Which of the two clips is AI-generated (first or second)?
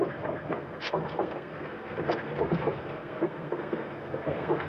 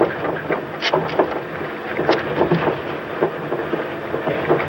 first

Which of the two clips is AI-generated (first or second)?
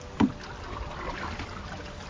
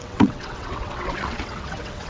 second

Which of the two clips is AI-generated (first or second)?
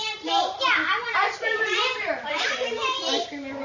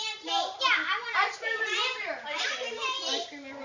first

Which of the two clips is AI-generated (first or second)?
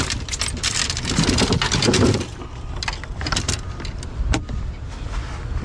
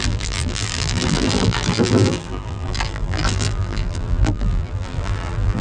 second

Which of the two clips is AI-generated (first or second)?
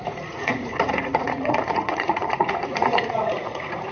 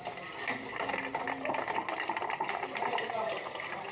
first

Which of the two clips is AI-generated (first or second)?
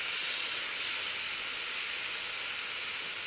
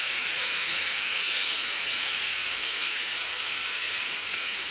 second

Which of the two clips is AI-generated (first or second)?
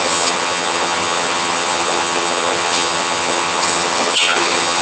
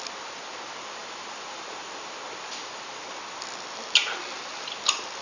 first